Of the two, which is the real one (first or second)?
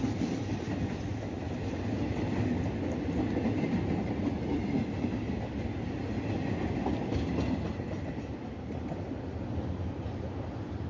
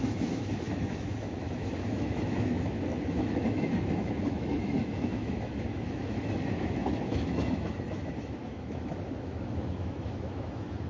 first